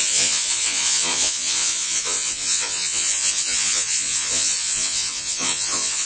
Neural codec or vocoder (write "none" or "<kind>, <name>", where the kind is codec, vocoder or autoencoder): vocoder, Vocos